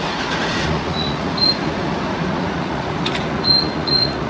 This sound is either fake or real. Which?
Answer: fake